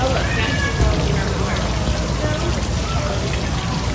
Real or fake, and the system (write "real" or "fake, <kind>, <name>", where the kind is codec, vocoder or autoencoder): real